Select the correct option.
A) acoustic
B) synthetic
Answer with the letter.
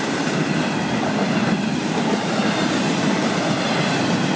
A